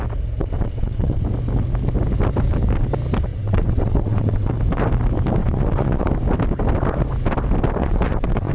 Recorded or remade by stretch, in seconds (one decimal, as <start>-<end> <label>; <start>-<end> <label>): 0.0-0.4 recorded; 0.4-1.2 remade; 1.2-3.3 recorded; 3.3-4.5 remade; 4.5-5.4 recorded; 5.4-6.1 remade; 6.1-7.8 recorded; 7.8-8.5 remade